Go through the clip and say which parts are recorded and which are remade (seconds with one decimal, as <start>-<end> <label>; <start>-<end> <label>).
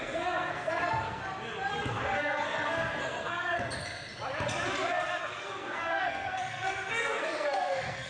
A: 0.0-1.2 remade; 1.2-1.7 recorded; 1.7-3.8 remade; 3.8-5.2 recorded; 5.2-8.1 remade